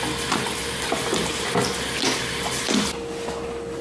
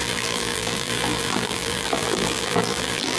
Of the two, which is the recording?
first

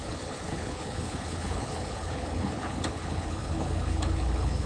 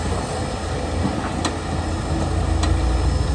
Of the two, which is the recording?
second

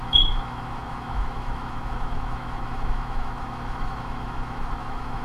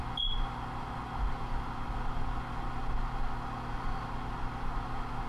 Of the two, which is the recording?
second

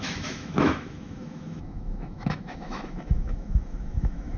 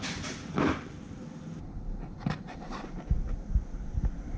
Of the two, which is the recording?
second